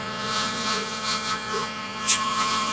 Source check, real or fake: fake